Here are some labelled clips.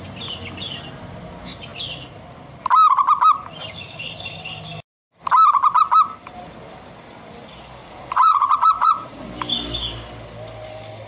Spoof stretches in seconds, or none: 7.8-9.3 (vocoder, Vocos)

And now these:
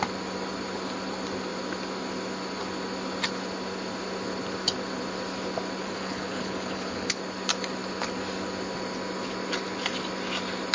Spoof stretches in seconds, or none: 5.8-7.2 (codec, HILCodec)